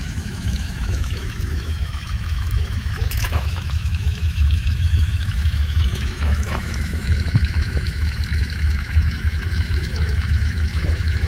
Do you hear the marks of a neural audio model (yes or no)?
yes